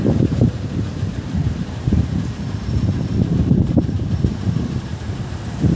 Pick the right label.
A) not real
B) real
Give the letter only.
A